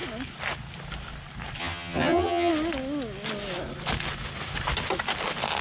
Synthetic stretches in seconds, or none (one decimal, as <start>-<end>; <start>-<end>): 1.6-2.5

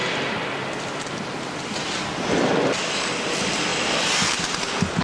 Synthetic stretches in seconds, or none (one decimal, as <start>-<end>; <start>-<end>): none